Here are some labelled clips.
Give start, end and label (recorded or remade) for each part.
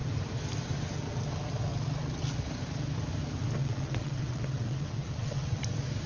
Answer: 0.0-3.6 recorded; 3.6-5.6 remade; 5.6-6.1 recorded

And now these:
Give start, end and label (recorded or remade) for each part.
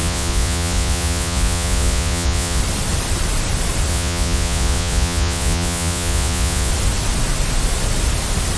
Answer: 0.0-2.6 remade; 2.6-3.9 recorded; 3.9-6.7 remade; 6.7-8.6 recorded